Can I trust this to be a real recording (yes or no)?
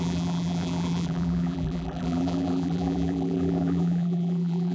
no